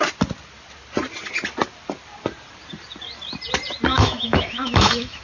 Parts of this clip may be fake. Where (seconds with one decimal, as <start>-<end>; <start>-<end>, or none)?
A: 3.9-5.2